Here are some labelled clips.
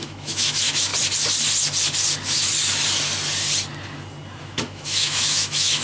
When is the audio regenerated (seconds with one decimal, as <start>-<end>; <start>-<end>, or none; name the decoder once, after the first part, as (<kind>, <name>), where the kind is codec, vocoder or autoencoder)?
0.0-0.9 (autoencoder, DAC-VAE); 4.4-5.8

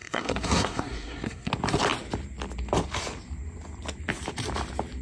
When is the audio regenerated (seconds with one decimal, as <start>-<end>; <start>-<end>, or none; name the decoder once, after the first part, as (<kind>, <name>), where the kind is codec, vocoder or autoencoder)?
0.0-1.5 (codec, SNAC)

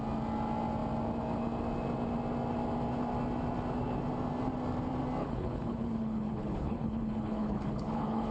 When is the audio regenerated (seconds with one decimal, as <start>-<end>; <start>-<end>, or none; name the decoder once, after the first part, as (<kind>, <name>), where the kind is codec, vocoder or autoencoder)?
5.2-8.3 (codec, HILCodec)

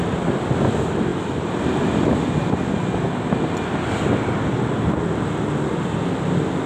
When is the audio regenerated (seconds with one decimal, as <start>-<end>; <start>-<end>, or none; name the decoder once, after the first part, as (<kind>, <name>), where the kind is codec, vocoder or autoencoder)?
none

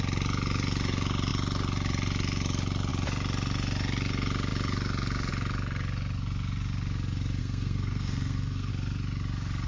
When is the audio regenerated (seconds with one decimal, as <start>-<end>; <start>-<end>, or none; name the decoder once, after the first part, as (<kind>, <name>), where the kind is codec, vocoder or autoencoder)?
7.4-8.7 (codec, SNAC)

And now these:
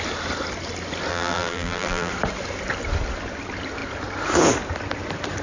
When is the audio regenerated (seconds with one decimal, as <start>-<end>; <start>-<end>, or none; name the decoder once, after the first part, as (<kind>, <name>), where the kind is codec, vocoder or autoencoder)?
1.1-2.1 (vocoder, BigVGAN v2)

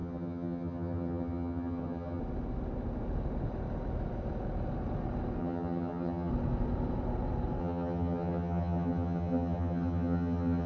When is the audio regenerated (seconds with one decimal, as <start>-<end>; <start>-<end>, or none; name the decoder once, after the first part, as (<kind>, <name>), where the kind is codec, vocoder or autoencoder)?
0.0-2.2 (vocoder, HiFi-GAN); 5.4-6.3; 7.6-10.7

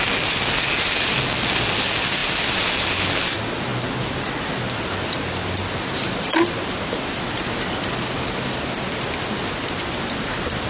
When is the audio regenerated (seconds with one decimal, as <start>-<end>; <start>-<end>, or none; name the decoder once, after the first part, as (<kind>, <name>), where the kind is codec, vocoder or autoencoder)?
none